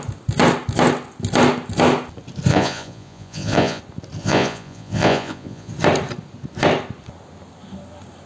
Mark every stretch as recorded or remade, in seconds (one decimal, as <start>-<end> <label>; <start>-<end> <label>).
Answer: 0.0-2.5 recorded; 2.5-3.8 remade; 3.8-4.2 recorded; 4.2-5.7 remade; 5.7-8.3 recorded